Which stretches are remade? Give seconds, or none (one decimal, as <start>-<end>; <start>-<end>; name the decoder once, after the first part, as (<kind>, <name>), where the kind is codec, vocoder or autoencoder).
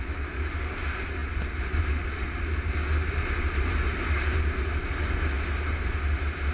none